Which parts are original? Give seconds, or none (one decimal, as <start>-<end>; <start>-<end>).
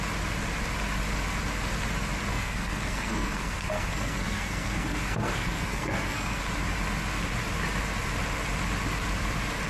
0.0-2.3; 6.4-9.7